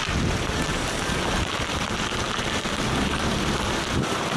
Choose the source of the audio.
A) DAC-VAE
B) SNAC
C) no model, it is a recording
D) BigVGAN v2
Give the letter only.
C